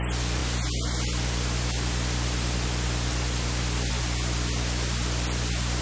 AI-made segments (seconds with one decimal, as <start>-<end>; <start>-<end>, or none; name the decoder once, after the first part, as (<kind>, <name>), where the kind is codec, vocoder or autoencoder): none